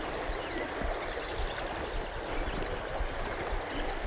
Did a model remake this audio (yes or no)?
no